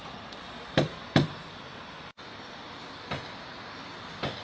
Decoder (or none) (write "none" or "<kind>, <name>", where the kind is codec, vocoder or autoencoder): none